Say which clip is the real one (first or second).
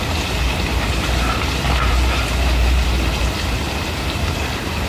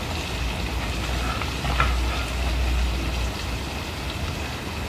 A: second